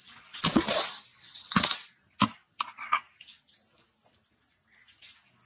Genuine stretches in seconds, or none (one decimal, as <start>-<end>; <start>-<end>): 0.0-5.5